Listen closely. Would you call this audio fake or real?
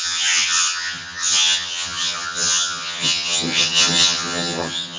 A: fake